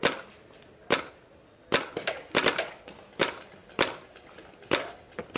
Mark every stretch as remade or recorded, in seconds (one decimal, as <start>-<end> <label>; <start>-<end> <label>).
0.0-5.4 recorded